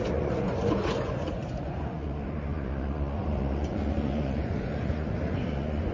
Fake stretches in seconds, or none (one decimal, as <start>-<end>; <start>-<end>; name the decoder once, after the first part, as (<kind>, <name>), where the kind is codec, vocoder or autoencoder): 0.0-5.9 (vocoder, Vocos)

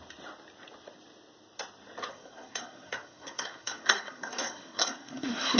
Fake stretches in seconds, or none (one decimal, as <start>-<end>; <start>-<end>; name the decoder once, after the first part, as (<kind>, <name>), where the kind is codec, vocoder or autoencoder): 2.1-5.6 (codec, SNAC)

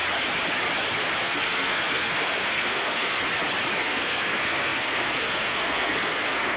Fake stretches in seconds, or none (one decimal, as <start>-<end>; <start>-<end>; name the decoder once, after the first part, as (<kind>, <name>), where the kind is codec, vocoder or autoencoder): 1.2-3.2 (codec, SNAC); 3.8-6.6